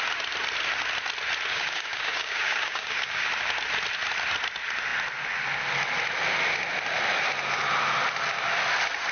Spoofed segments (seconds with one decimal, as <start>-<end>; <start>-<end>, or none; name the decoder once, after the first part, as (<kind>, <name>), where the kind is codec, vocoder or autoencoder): 1.5-3.3 (codec, DAC)